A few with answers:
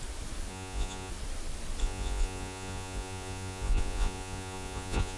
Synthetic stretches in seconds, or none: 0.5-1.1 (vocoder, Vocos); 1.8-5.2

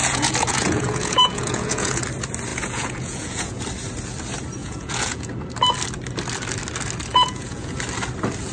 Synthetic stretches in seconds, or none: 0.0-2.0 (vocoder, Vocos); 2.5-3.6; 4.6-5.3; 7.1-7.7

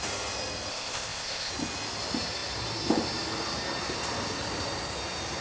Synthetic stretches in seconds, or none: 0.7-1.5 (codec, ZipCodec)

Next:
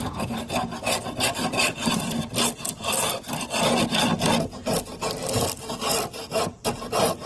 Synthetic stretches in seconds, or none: none

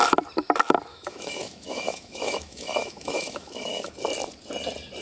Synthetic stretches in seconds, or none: 0.9-3.9 (autoencoder, DAC-VAE)

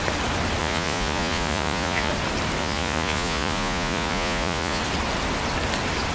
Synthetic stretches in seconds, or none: 0.6-2.1 (vocoder, Vocos); 2.6-4.8